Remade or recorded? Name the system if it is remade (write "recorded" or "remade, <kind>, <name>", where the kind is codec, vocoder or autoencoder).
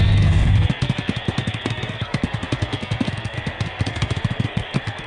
remade, codec, SNAC